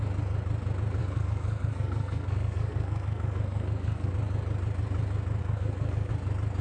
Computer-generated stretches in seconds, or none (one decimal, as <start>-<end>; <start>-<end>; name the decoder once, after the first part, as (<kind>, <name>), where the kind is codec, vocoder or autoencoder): 1.0-4.1 (codec, SNAC); 5.4-6.1